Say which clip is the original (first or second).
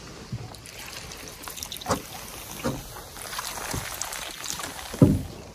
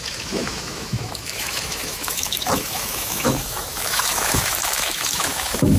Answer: first